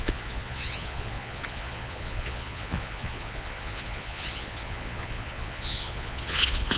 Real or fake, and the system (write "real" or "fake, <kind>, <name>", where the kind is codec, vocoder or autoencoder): fake, vocoder, Vocos